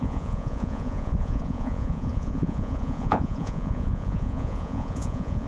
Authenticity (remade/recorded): remade